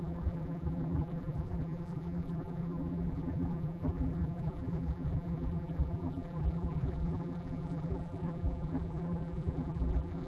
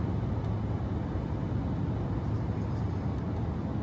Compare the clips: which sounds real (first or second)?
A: second